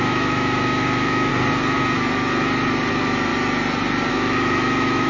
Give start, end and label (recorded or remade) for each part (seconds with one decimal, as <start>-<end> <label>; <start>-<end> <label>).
0.0-1.3 remade; 1.3-2.9 recorded; 2.9-3.3 remade; 3.3-4.1 recorded; 4.1-5.1 remade